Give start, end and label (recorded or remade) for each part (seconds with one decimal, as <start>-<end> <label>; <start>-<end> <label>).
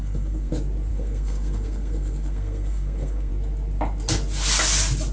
0.0-0.5 remade; 0.5-0.9 recorded; 0.9-3.3 remade; 3.3-5.1 recorded